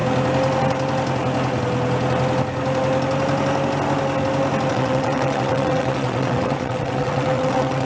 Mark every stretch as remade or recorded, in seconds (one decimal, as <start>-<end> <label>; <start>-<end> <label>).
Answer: 0.0-4.7 recorded; 4.7-7.9 remade